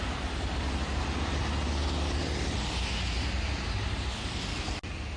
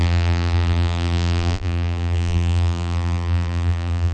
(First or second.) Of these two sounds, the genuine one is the first